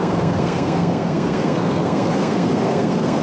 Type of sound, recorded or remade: remade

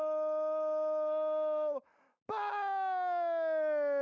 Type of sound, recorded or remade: remade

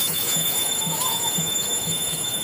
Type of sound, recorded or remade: remade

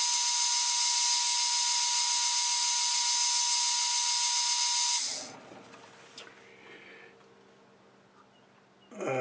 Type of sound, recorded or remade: recorded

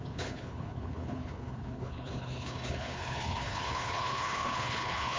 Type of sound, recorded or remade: remade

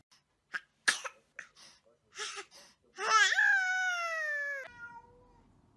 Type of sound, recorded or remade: recorded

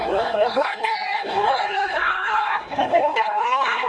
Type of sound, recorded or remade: remade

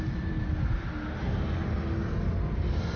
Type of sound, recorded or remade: recorded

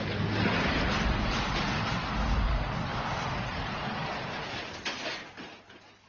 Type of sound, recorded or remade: recorded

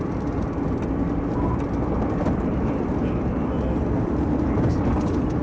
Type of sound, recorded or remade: remade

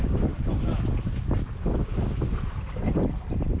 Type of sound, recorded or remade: recorded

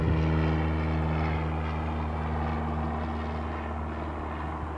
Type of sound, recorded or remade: recorded